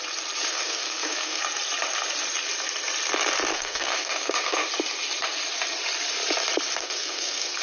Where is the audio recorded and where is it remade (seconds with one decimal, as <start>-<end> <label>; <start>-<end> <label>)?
0.0-0.5 recorded; 0.5-1.4 remade; 1.4-3.5 recorded; 3.5-4.7 remade; 4.7-6.8 recorded; 6.8-7.6 remade